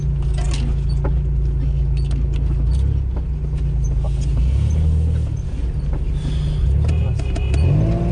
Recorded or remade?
recorded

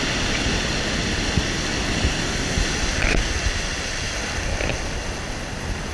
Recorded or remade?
recorded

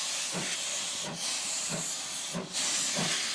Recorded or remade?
recorded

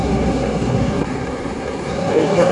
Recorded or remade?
remade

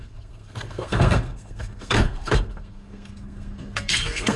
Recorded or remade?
remade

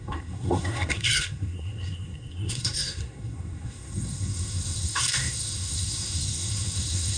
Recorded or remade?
remade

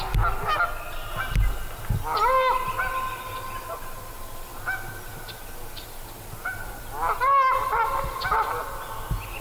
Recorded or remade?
recorded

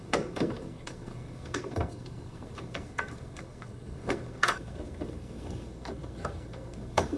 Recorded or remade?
remade